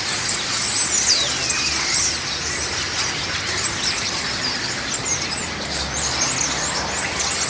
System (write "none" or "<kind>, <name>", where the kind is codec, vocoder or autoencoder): none